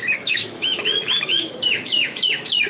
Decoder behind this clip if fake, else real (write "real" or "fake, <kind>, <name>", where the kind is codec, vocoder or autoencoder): fake, autoencoder, DAC-VAE